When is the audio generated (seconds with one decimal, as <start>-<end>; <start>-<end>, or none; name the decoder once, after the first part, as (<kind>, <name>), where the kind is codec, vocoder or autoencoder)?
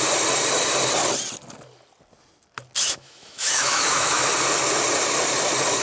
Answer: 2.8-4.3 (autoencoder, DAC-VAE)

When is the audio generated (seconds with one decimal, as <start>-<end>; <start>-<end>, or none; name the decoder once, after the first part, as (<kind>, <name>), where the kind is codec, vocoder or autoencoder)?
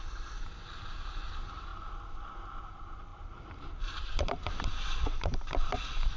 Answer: 0.0-1.7 (vocoder, BigVGAN v2); 2.6-6.2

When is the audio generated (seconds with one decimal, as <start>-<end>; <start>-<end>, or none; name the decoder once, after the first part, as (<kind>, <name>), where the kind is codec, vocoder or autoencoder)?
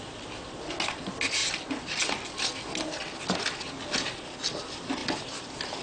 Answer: 5.0-5.8 (vocoder, BigVGAN v2)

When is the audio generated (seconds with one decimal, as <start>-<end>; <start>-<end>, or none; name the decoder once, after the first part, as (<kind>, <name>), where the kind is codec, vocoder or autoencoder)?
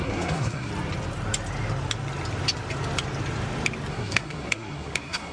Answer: 0.0-0.7 (codec, SNAC); 3.9-5.3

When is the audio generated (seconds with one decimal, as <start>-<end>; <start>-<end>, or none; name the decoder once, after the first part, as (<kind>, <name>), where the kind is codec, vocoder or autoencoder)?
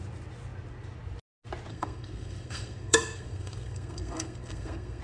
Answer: 1.7-5.0 (codec, SNAC)